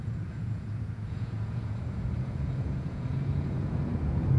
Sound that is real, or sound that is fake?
fake